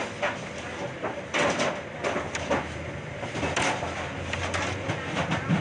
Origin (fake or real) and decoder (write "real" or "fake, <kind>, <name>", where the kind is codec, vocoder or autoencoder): real